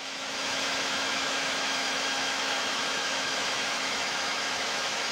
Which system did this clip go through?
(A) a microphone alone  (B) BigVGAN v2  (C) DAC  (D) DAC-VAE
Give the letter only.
D